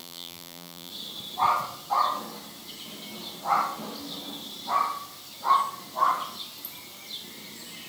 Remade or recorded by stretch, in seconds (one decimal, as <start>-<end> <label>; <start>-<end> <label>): 0.0-0.9 remade; 0.9-7.9 recorded